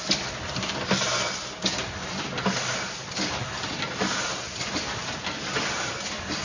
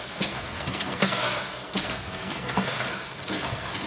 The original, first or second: first